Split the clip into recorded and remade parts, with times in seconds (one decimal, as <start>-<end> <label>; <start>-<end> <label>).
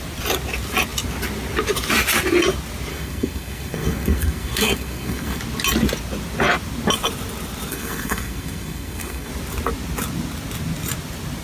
0.0-2.9 recorded; 2.9-5.4 remade; 5.4-7.7 recorded; 7.7-9.3 remade; 9.3-11.4 recorded